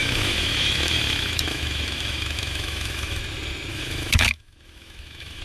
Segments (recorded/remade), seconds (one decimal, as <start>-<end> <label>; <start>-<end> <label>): 0.0-3.2 remade; 3.2-3.7 recorded; 3.7-5.4 remade